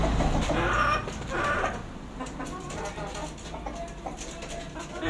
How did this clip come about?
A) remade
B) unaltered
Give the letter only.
B